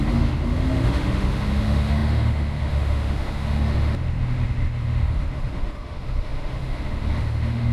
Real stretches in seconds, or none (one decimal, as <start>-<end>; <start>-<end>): none